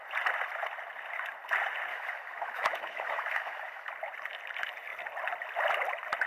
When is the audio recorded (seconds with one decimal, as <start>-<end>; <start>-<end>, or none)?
0.0-1.9; 3.9-6.3